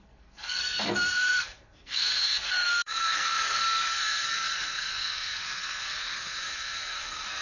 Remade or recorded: remade